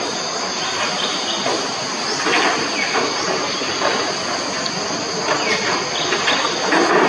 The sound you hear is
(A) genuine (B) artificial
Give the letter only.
A